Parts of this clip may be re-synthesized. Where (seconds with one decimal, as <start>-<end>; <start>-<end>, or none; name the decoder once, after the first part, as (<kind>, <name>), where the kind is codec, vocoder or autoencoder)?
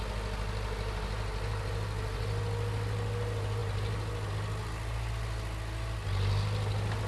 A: none